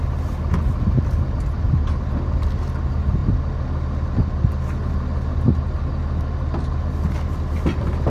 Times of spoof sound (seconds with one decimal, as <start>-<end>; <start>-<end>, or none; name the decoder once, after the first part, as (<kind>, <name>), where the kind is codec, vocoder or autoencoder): none